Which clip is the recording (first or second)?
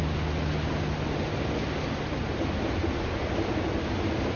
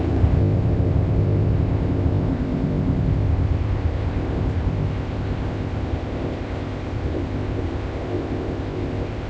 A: first